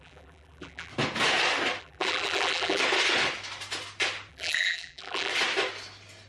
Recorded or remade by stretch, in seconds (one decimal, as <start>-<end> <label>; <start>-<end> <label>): 0.0-0.9 remade; 0.9-1.8 recorded; 1.8-2.8 remade; 2.8-4.3 recorded; 4.3-5.3 remade; 5.3-6.3 recorded